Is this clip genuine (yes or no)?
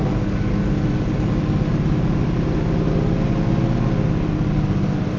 yes